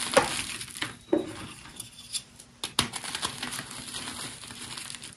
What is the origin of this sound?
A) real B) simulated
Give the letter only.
A